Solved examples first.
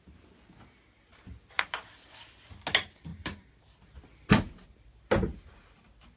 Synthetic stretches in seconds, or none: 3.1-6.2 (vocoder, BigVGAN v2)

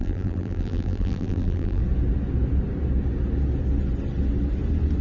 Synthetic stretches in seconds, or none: 0.0-1.8 (vocoder, BigVGAN v2)

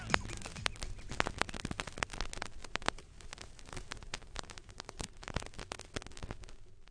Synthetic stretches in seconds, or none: 2.6-5.4 (vocoder, BigVGAN v2)

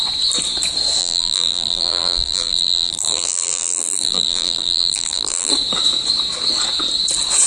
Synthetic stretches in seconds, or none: 1.0-5.5 (vocoder, BigVGAN v2)

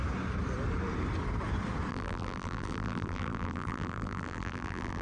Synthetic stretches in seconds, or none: 1.9-5.0 (vocoder, BigVGAN v2)